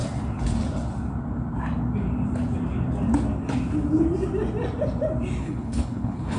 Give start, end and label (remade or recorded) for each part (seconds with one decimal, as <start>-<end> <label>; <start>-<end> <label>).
0.0-5.4 recorded; 5.4-6.4 remade